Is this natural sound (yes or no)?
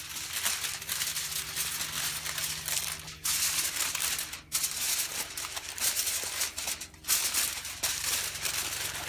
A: yes